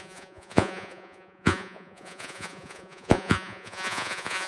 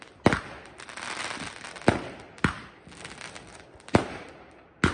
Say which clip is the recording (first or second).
second